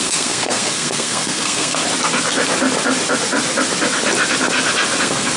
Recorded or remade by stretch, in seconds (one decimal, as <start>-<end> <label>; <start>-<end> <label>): 0.0-1.8 remade; 1.8-5.0 recorded; 5.0-5.4 remade